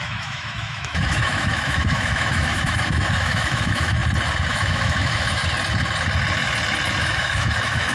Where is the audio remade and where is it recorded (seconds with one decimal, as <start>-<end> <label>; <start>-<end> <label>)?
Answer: 0.0-4.0 remade; 4.0-4.5 recorded; 4.5-5.4 remade; 5.4-7.0 recorded; 7.0-7.9 remade